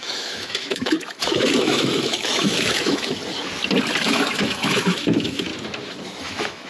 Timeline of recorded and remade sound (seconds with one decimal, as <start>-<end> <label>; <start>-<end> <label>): 0.0-3.2 remade; 3.2-4.0 recorded; 4.0-5.5 remade; 5.5-6.2 recorded; 6.2-6.7 remade